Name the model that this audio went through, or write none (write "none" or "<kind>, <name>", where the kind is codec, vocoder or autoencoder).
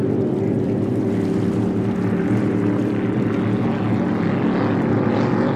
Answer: none